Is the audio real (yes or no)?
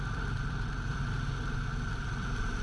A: no